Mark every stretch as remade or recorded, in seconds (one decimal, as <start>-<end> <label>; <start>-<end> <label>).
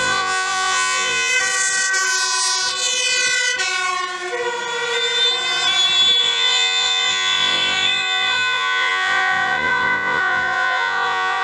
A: 0.0-1.3 remade; 1.3-6.2 recorded; 6.2-11.4 remade